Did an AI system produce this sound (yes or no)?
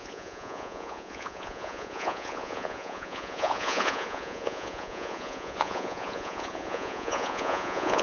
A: yes